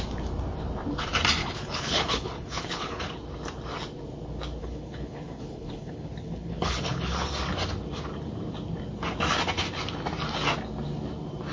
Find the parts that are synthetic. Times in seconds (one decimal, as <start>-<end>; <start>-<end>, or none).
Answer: 1.4-3.2; 4.6-7.3